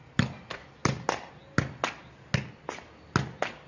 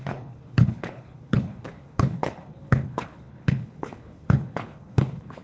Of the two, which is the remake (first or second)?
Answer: second